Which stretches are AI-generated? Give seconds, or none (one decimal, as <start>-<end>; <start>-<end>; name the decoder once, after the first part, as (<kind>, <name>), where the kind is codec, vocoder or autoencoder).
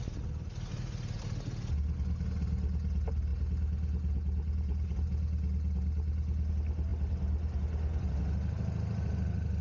6.9-7.6 (vocoder, BigVGAN v2)